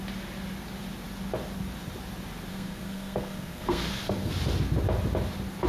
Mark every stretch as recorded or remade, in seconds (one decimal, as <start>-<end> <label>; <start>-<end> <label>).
0.0-2.5 recorded; 2.5-4.3 remade; 4.3-5.7 recorded

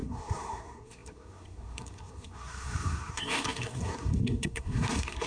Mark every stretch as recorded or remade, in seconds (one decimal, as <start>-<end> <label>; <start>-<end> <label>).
0.0-5.3 remade

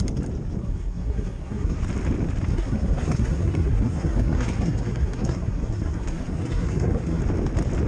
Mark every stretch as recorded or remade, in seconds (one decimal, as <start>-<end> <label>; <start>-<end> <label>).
0.0-0.6 recorded; 0.6-1.8 remade; 1.8-2.5 recorded; 2.5-7.2 remade; 7.2-7.9 recorded

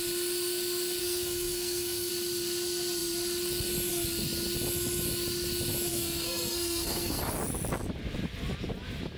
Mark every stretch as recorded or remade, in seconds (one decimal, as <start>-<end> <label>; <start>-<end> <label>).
0.0-1.0 recorded; 1.0-2.1 remade; 2.1-5.9 recorded; 5.9-7.2 remade; 7.2-9.2 recorded